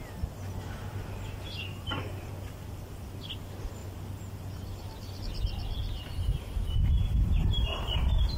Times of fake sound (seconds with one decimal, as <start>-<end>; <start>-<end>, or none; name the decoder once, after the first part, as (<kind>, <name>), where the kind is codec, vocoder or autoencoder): 7.4-8.4 (vocoder, BigVGAN v2)